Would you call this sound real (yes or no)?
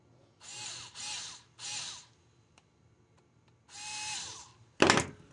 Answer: yes